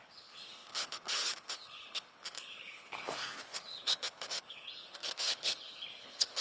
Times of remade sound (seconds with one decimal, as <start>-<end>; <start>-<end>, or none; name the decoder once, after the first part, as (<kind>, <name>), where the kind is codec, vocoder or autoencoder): 0.0-6.4 (codec, HILCodec)